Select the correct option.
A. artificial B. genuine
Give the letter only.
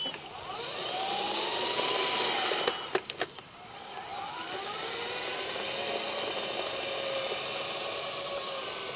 B